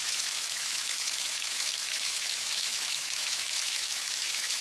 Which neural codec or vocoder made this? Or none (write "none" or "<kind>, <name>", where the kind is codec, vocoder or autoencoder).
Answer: autoencoder, DAC-VAE